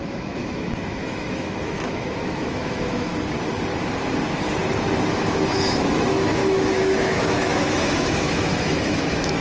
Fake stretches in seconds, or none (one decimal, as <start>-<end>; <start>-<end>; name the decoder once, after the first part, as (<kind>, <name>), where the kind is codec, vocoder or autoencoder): 0.0-3.1 (autoencoder, DAC-VAE); 5.1-9.4